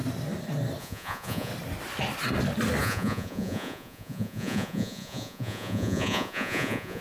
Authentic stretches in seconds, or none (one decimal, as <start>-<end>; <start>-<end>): 0.0-0.8; 1.5-2.8